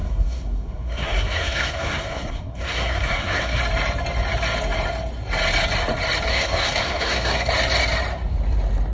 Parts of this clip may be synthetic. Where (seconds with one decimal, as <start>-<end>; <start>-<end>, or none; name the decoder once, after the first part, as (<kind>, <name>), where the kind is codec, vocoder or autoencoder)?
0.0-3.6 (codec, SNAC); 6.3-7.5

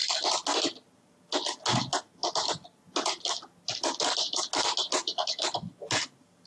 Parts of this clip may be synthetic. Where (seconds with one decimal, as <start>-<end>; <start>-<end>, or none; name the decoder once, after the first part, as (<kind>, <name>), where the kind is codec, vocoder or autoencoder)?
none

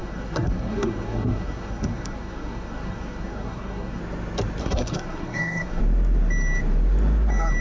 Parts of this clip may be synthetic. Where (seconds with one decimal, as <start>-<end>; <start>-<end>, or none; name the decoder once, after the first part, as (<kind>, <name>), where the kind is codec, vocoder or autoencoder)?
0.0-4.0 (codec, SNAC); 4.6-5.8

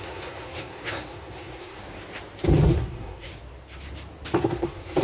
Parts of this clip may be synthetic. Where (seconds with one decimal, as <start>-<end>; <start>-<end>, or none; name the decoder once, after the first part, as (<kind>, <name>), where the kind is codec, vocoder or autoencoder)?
0.0-1.8 (codec, SNAC); 2.6-3.3; 4.4-5.0

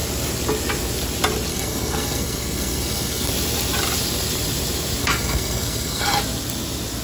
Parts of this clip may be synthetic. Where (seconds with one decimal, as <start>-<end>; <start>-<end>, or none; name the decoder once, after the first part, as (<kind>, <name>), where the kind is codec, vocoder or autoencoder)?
1.5-3.3 (codec, SNAC); 5.0-6.2

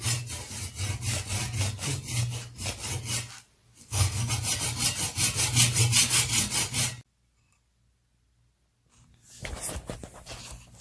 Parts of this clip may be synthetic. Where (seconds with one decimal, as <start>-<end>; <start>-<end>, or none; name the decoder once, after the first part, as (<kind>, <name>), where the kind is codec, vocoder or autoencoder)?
3.8-4.3 (codec, SNAC)

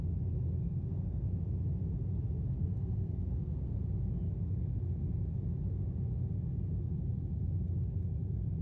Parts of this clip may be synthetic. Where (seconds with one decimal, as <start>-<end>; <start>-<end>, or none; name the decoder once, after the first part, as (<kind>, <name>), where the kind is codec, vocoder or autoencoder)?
0.6-1.3 (codec, SNAC); 2.6-3.8